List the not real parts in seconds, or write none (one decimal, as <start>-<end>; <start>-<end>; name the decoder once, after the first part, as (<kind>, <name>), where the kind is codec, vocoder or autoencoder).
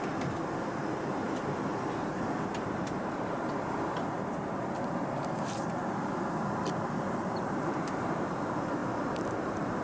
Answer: 1.7-3.7 (vocoder, BigVGAN v2); 4.6-5.7; 8.8-9.8